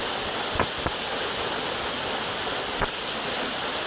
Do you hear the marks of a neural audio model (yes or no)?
no